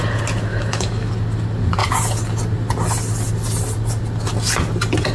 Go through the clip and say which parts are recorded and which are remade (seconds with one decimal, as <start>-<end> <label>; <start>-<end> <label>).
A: 0.0-0.5 recorded; 0.5-1.1 remade; 1.1-5.1 recorded